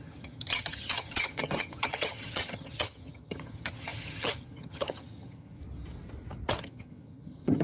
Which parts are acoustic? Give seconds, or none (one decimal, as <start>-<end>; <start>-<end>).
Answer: 5.6-6.6